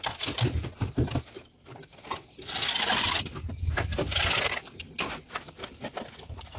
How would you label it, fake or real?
real